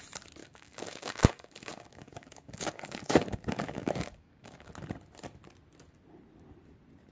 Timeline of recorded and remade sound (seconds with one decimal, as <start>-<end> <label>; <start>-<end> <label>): 0.0-0.4 recorded; 0.4-4.7 remade; 4.7-7.1 recorded